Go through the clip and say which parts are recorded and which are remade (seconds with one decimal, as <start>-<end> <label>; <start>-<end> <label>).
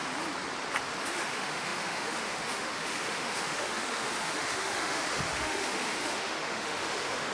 0.0-1.0 recorded; 1.0-7.3 remade